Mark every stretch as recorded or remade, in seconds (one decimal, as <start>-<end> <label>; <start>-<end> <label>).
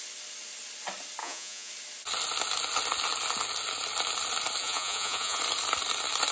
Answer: 0.0-1.2 recorded; 1.2-1.7 remade; 1.7-4.6 recorded; 4.6-5.4 remade; 5.4-6.3 recorded